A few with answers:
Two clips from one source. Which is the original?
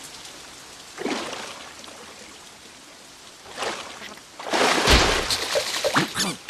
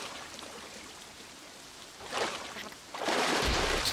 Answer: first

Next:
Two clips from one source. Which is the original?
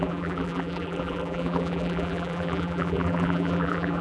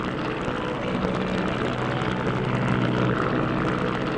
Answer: second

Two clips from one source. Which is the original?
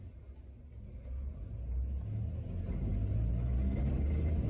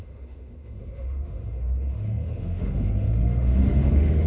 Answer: first